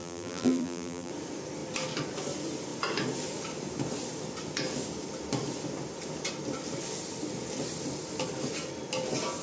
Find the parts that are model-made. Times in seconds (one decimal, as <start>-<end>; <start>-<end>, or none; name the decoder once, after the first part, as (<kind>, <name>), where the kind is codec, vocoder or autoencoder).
0.0-1.1 (vocoder, BigVGAN v2)